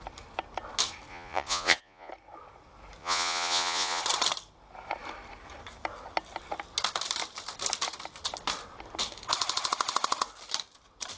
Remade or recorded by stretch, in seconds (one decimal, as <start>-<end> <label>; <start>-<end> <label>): 0.0-1.1 recorded; 1.1-2.1 remade; 2.1-3.0 recorded; 3.0-4.0 remade; 4.0-11.2 recorded